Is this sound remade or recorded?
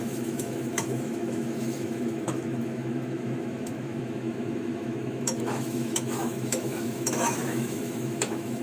remade